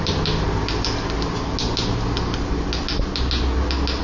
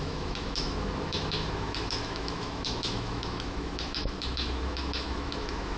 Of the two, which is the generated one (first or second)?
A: second